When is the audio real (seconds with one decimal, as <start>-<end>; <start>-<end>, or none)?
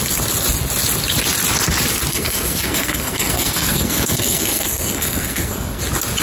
0.0-2.1; 5.8-6.2